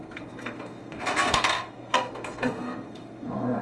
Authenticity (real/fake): fake